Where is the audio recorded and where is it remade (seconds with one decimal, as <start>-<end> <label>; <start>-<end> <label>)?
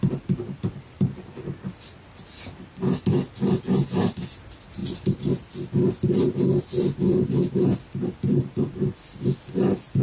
0.0-10.0 recorded